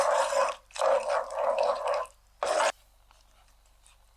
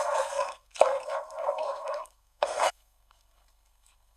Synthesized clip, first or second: second